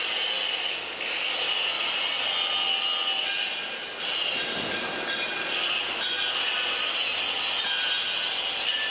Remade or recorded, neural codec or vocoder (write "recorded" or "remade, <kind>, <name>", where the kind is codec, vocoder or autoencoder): recorded